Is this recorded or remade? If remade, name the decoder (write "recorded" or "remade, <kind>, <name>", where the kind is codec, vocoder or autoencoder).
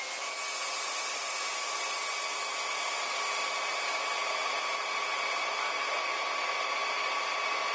recorded